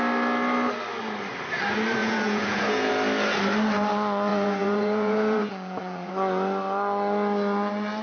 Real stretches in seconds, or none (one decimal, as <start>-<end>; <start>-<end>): 0.0-2.0; 2.9-4.3; 6.1-8.0